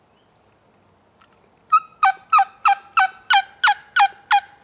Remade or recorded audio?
recorded